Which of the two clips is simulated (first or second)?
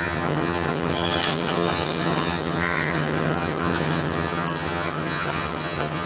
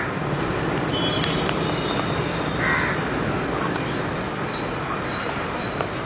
first